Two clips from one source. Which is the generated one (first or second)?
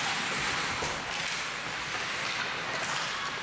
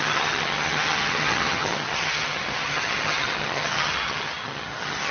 second